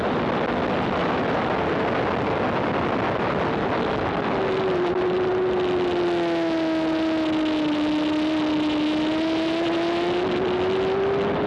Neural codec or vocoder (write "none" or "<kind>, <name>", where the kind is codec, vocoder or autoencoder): none